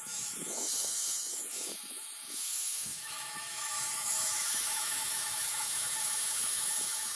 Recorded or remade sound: remade